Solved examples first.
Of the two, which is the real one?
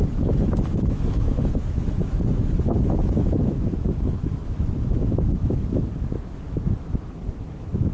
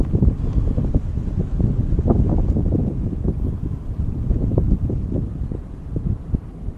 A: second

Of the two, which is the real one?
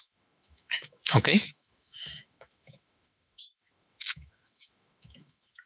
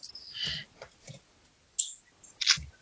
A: second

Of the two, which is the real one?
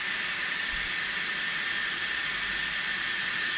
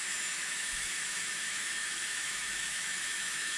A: first